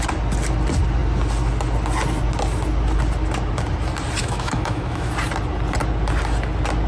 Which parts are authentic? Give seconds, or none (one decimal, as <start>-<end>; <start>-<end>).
0.0-4.2; 5.1-6.9